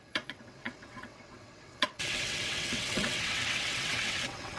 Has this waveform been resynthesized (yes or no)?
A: yes